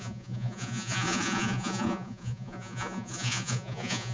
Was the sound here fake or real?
fake